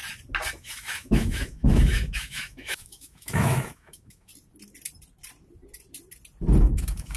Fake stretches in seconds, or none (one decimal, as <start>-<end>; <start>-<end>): 0.5-4.3; 6.6-7.2